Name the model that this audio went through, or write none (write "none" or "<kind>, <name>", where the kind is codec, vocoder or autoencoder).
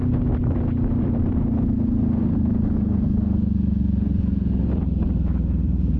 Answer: none